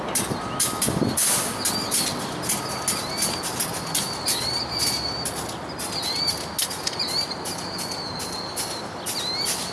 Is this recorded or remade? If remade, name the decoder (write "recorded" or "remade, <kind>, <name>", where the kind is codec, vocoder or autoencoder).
recorded